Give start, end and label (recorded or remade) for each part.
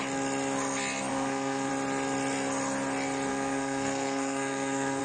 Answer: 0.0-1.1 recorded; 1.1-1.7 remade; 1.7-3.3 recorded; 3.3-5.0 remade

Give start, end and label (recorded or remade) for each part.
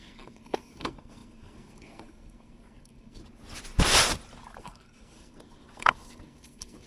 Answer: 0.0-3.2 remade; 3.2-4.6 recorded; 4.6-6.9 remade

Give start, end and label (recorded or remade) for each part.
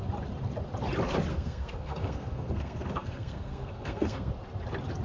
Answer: 0.0-1.3 recorded; 1.3-4.3 remade; 4.3-5.0 recorded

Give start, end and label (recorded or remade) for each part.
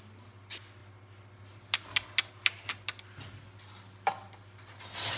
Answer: 0.0-5.2 recorded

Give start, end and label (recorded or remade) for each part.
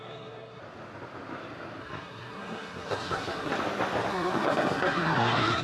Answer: 0.0-0.6 remade; 0.6-1.8 recorded; 1.8-3.5 remade; 3.5-4.1 recorded; 4.1-5.6 remade